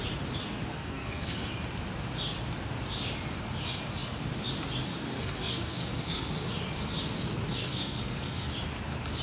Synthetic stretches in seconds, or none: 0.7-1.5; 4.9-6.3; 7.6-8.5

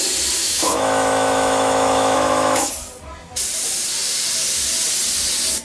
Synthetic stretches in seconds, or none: 0.4-2.7